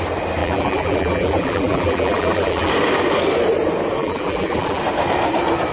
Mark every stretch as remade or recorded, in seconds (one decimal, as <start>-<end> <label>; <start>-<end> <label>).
0.0-0.4 recorded; 0.4-2.7 remade; 2.7-4.0 recorded; 4.0-4.8 remade; 4.8-5.7 recorded